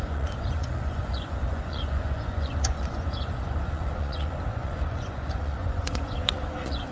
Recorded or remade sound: remade